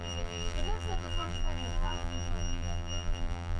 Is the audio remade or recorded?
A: remade